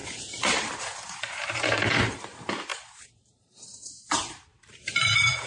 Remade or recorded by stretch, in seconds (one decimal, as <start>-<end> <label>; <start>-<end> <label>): 0.0-5.5 remade